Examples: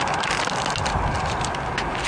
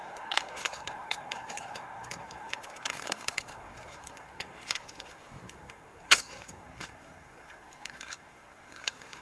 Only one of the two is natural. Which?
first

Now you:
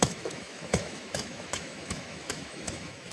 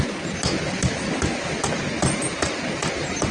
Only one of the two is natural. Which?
second